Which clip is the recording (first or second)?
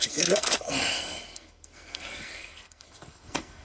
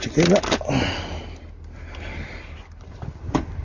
second